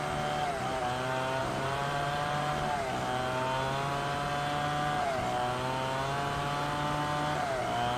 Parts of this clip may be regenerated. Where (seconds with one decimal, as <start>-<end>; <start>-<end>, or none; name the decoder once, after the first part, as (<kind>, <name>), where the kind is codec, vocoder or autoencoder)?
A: 1.4-2.5 (vocoder, BigVGAN v2)